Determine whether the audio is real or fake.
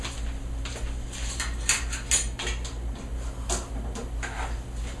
real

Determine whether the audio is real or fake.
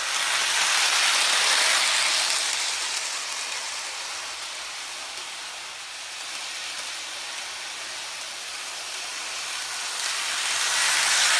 real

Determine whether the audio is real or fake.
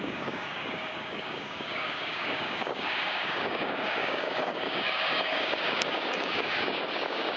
fake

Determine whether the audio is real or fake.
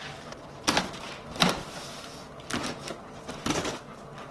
real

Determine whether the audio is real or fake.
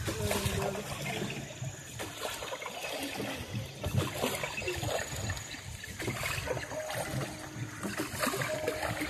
real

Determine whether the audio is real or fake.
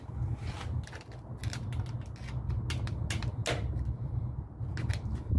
real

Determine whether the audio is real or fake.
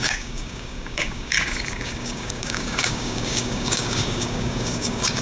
fake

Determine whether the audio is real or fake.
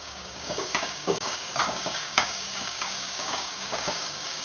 fake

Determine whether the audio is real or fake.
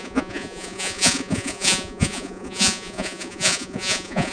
fake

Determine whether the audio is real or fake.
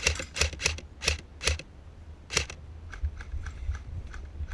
real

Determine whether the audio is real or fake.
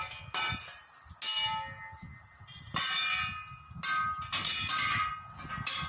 real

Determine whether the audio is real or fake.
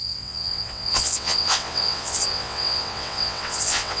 fake